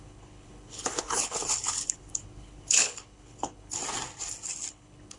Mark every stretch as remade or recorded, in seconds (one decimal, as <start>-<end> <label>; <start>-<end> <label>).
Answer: 0.0-3.8 remade; 3.8-4.7 recorded; 4.7-5.2 remade